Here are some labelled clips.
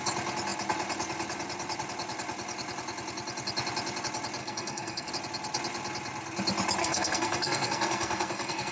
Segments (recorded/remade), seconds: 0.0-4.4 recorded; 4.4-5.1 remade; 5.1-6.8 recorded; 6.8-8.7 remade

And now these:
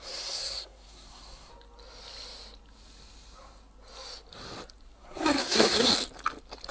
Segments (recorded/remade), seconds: 0.0-1.5 remade; 1.5-5.0 recorded; 5.0-5.9 remade; 5.9-6.7 recorded

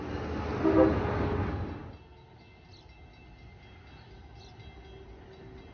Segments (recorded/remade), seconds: 0.0-5.7 recorded

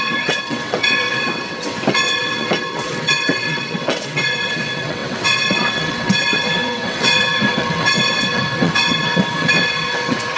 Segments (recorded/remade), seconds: 0.0-10.4 remade